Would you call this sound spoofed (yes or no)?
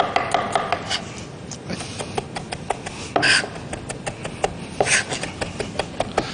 no